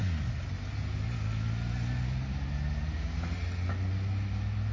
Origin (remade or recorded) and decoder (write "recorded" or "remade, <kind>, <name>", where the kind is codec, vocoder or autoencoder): recorded